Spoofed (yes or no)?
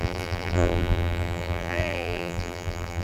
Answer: yes